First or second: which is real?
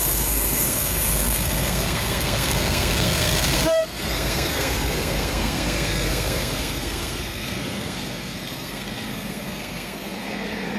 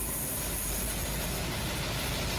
second